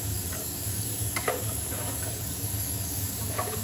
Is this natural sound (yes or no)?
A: no